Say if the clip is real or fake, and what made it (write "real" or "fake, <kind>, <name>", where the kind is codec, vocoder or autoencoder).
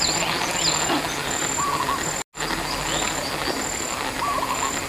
real